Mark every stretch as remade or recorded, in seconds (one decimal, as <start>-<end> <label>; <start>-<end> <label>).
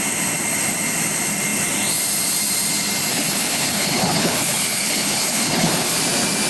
0.0-3.1 recorded; 3.1-6.0 remade; 6.0-6.5 recorded